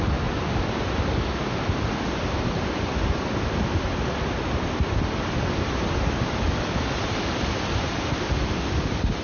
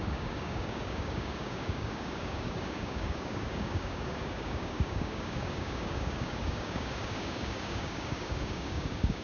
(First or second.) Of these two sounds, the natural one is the first